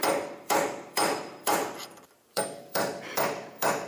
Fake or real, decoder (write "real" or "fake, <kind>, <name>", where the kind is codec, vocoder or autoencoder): fake, vocoder, BigVGAN v2